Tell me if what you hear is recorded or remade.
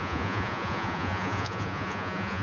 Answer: remade